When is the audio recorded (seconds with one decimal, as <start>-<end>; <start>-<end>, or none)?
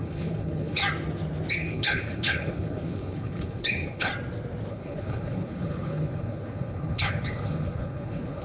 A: 0.8-1.5; 4.1-4.7